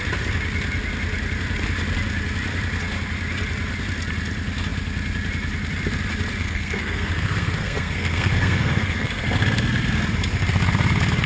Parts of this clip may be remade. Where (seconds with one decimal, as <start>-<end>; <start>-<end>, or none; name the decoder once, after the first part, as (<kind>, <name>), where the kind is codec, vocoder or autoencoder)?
6.4-9.2 (codec, SNAC)